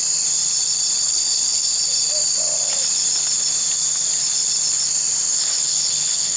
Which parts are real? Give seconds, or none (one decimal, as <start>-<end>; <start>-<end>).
0.0-1.0; 1.7-5.3